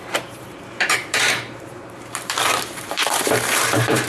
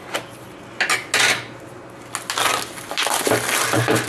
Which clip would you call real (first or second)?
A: second